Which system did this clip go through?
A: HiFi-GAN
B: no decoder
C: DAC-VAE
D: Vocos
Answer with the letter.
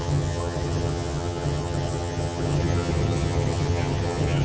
A